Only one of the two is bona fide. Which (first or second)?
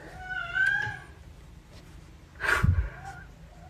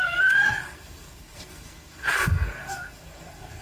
first